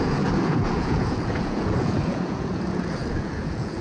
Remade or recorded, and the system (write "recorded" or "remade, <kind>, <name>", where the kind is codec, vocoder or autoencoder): remade, vocoder, Vocos